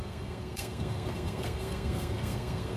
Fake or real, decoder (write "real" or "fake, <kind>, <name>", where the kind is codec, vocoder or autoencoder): fake, codec, SNAC